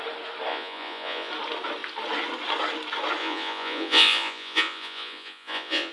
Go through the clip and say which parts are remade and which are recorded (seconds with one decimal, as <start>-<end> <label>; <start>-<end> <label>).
0.0-0.5 recorded; 0.5-1.3 remade; 1.3-3.2 recorded; 3.2-5.9 remade